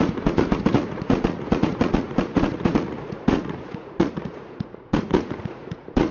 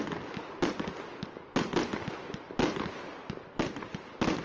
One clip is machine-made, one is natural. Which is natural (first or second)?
second